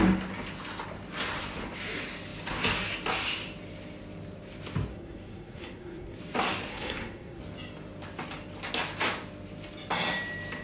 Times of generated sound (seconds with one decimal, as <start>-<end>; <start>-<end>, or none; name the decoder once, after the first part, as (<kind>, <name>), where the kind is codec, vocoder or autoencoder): 4.9-6.2 (codec, SNAC); 6.7-7.4